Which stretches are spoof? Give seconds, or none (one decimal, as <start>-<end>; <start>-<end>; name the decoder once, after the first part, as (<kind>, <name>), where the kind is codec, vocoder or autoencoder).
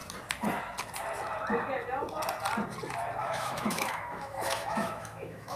3.2-5.6 (autoencoder, DAC-VAE)